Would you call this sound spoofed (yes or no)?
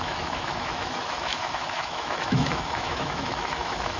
yes